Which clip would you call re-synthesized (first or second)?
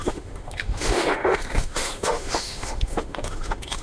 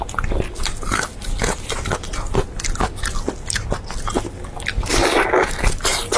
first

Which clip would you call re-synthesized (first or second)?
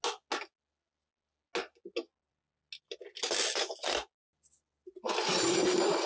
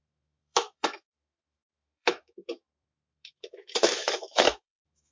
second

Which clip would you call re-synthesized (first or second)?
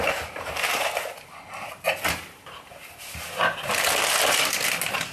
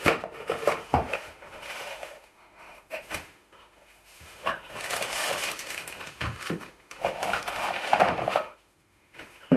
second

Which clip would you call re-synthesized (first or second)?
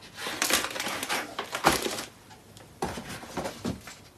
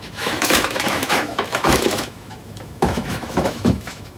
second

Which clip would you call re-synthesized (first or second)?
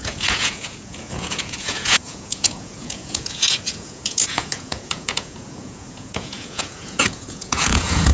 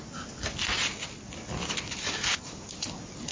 first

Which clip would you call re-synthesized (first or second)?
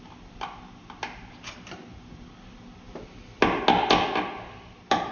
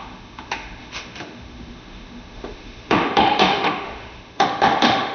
second